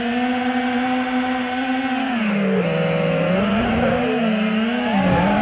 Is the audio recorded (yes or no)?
yes